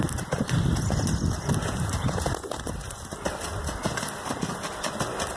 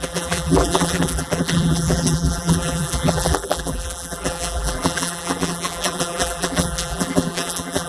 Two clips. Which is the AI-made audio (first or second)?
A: second